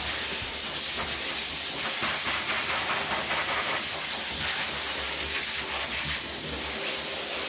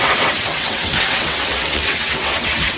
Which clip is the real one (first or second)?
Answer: first